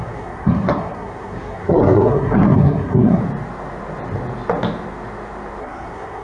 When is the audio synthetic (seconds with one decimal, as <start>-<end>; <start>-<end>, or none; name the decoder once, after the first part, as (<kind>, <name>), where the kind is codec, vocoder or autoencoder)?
0.0-3.2 (codec, SNAC); 5.6-6.2